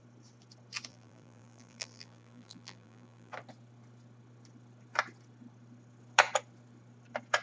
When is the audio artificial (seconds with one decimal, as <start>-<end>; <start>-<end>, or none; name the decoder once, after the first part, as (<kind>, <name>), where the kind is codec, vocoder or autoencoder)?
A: 0.9-3.3 (vocoder, BigVGAN v2)